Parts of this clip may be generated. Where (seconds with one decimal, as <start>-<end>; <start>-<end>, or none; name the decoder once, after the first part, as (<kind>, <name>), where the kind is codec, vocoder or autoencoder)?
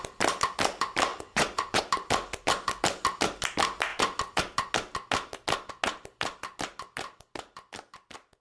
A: 1.1-1.8 (vocoder, Vocos)